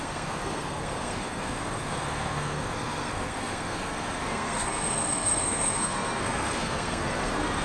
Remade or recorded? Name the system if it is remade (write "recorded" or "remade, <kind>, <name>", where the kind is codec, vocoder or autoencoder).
remade, codec, SNAC